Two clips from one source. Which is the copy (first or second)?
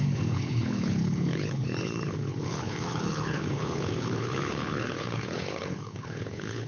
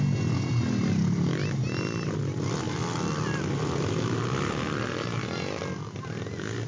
first